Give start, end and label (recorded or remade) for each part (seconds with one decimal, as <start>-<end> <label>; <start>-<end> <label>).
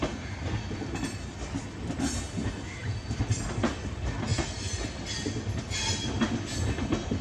0.0-7.2 recorded